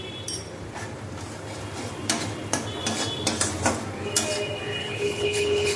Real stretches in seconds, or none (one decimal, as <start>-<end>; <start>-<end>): 0.0-4.8